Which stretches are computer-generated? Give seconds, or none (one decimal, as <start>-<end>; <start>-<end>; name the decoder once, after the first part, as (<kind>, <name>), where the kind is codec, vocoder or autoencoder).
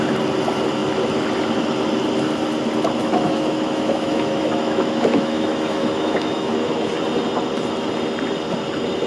3.0-6.9 (autoencoder, DAC-VAE)